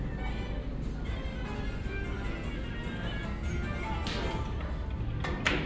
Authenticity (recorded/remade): recorded